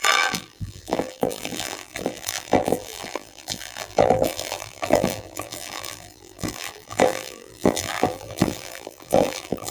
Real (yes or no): no